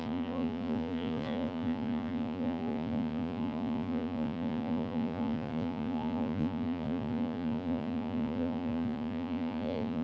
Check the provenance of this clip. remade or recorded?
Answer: remade